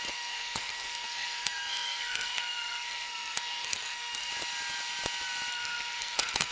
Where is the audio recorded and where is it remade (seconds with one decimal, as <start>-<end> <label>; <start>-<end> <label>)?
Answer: 0.0-4.3 remade; 4.3-5.5 recorded; 5.5-6.5 remade